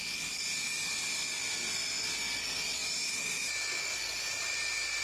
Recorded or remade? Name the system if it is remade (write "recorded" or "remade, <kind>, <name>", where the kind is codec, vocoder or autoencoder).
recorded